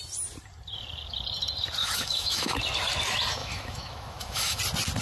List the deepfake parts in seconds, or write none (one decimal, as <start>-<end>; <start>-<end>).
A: 1.8-2.6; 3.4-4.6